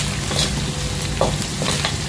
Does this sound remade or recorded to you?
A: recorded